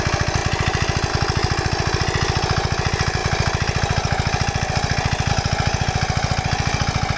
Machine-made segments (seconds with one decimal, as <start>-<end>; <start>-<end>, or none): none